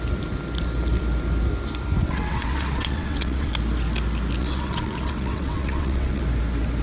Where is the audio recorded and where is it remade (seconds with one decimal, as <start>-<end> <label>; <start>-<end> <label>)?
0.0-2.0 recorded; 2.0-3.5 remade; 3.5-4.4 recorded; 4.4-6.2 remade; 6.2-6.8 recorded